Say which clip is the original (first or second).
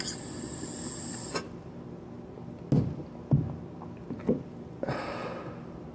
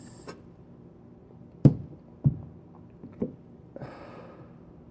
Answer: first